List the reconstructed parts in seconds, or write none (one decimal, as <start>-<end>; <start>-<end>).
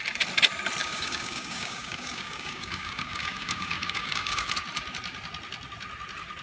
0.8-4.5